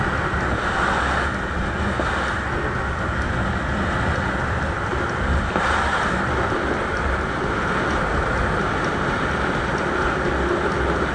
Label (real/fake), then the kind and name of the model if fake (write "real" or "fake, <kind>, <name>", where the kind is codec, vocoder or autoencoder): real